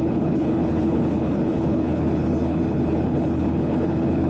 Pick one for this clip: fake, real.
fake